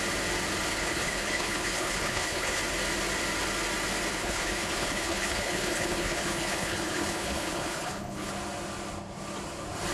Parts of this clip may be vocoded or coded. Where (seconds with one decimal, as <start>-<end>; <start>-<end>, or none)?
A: 0.7-2.6; 4.1-8.3